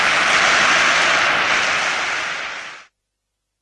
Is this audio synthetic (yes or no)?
no